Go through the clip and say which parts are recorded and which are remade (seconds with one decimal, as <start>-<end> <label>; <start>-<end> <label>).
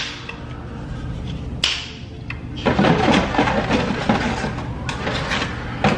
0.0-6.0 recorded